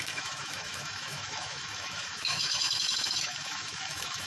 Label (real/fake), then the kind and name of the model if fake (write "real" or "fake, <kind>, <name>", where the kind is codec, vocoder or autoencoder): fake, autoencoder, DAC-VAE